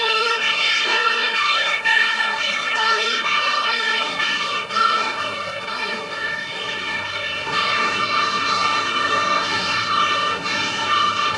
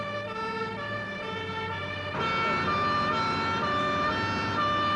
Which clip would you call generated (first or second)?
first